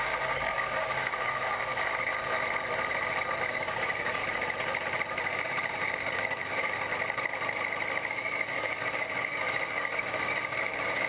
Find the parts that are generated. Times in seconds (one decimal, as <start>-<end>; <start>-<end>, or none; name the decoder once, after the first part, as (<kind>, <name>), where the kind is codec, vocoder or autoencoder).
0.0-1.7 (codec, DAC); 3.5-4.2; 5.3-6.9; 8.1-11.1